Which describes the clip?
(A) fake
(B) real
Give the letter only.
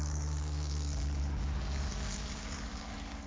A